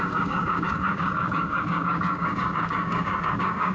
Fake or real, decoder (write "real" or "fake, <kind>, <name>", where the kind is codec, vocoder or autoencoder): fake, codec, DAC